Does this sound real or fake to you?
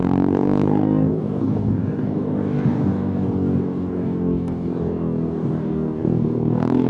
fake